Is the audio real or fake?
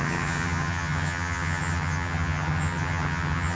fake